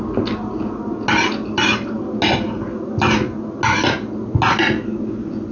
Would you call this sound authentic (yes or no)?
yes